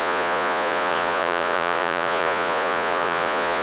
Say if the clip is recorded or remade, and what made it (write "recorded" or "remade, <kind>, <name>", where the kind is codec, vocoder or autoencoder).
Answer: remade, vocoder, Vocos